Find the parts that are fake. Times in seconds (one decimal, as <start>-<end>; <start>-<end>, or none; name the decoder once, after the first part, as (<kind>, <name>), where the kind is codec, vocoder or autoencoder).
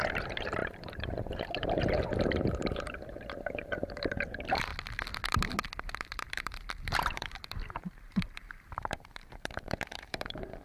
0.0-4.7 (vocoder, BigVGAN v2); 5.8-10.6